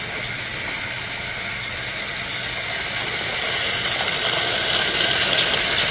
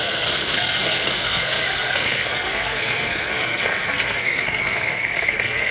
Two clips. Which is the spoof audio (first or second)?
second